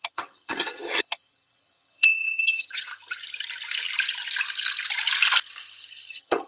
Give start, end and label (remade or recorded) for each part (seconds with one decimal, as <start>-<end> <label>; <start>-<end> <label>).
0.0-2.9 remade; 2.9-6.1 recorded; 6.1-6.5 remade